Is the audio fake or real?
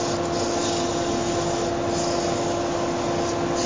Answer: real